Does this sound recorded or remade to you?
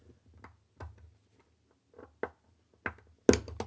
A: recorded